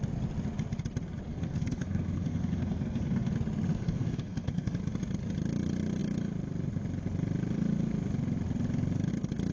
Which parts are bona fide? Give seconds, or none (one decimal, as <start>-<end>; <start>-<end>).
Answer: 0.0-1.3; 3.3-3.7; 4.7-9.5